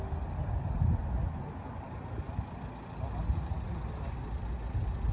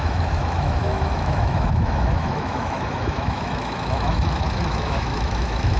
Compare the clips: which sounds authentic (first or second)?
first